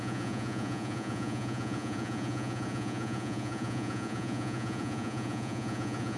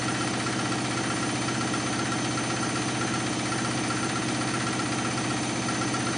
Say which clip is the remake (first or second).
first